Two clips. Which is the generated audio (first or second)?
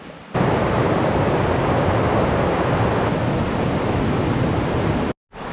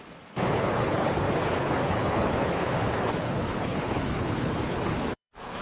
second